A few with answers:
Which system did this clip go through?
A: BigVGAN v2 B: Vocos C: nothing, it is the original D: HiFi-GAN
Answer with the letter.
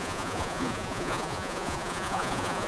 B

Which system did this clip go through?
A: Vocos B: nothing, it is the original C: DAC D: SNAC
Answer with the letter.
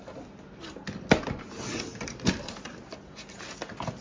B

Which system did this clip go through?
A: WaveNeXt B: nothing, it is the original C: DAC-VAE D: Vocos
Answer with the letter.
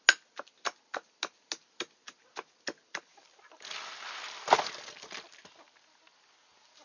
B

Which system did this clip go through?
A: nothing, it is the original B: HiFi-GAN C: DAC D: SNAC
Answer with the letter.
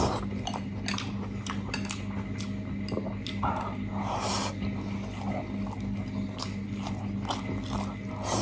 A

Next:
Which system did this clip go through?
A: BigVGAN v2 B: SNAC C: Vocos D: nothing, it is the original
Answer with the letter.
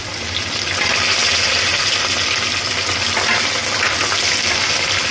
D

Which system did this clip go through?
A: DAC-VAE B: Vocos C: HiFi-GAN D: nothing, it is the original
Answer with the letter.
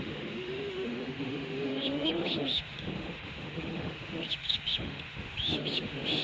A